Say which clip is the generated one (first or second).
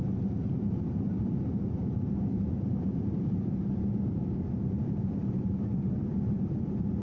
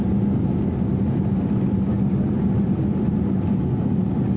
first